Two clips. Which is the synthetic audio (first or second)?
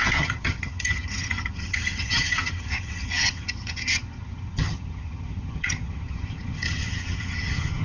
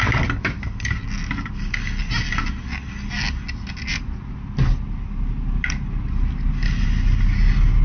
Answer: first